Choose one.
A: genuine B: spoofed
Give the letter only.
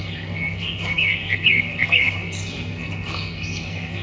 B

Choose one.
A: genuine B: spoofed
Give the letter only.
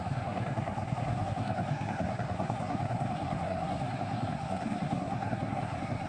B